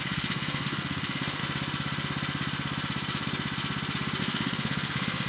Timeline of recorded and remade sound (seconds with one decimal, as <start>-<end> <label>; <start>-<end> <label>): 0.0-1.4 remade; 1.4-4.2 recorded; 4.2-5.3 remade